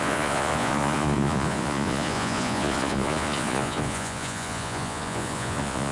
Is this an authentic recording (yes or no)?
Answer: no